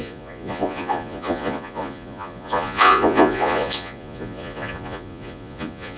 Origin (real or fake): fake